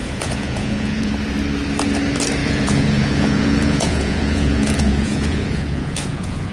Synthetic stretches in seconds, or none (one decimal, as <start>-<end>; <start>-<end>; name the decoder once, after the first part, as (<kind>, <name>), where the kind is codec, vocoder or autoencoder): 0.0-1.1 (vocoder, Vocos); 2.4-6.5